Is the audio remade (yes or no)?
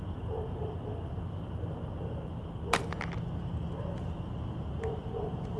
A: no